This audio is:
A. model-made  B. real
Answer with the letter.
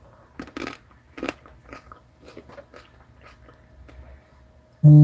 B